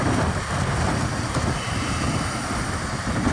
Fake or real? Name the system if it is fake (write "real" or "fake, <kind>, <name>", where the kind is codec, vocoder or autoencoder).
real